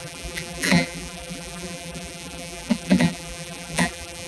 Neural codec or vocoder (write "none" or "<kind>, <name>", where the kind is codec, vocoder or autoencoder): vocoder, BigVGAN v2